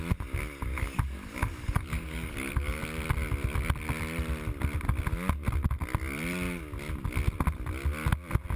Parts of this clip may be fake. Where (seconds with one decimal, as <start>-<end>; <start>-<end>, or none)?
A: 0.7-2.8